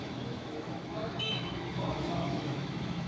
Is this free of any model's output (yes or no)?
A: no